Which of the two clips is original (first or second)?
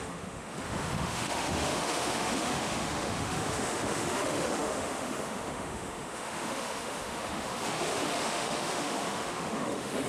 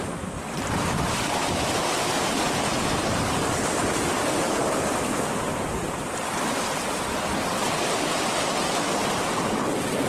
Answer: second